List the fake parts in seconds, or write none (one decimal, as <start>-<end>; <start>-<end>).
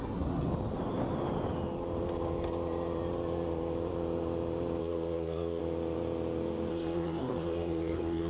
0.0-0.5; 4.8-5.6; 6.7-8.3